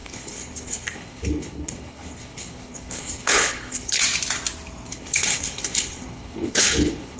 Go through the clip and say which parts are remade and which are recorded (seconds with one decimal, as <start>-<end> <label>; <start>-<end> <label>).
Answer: 0.0-4.0 remade; 4.0-4.9 recorded; 4.9-7.2 remade